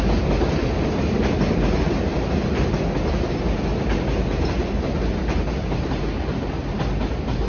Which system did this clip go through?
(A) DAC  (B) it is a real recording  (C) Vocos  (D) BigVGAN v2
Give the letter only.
B